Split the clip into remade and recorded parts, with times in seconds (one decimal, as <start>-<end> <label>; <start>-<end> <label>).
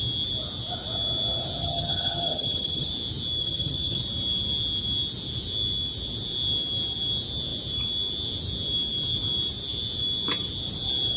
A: 0.0-1.6 recorded; 1.6-2.9 remade; 2.9-3.4 recorded; 3.4-4.0 remade; 4.0-11.2 recorded